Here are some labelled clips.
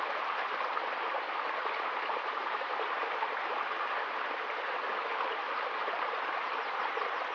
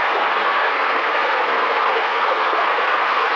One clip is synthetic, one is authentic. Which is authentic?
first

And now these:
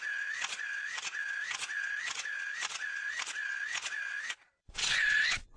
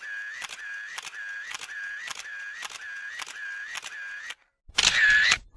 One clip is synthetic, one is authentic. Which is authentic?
second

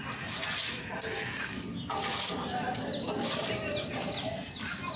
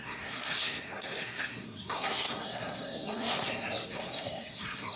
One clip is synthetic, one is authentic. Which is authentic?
first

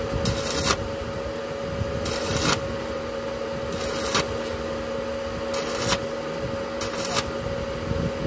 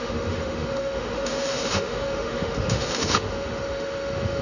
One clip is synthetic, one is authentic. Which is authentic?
first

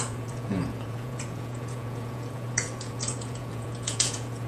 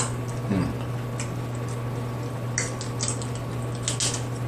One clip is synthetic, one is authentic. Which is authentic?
second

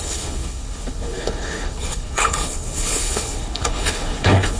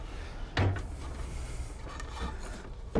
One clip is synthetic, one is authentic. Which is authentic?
second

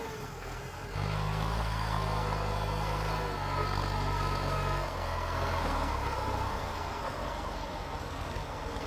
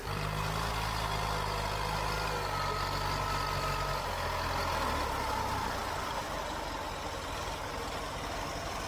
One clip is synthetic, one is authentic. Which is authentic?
second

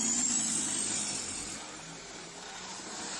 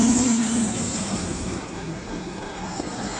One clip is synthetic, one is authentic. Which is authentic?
first